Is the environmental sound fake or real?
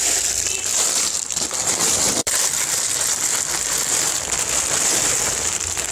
fake